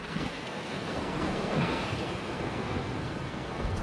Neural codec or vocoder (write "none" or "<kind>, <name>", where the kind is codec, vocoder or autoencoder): codec, SNAC